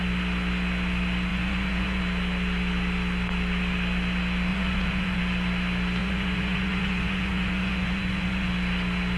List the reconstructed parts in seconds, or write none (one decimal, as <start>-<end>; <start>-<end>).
1.3-2.0; 4.5-5.2; 6.0-8.5